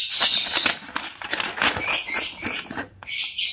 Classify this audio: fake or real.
real